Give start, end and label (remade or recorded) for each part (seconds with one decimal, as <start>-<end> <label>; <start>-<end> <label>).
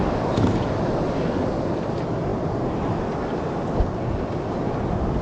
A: 0.0-5.2 recorded